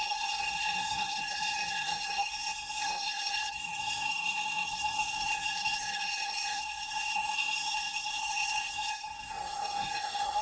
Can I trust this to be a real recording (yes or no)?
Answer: no